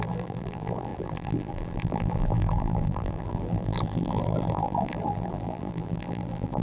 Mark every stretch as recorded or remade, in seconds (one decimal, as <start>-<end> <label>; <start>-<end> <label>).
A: 0.0-6.6 remade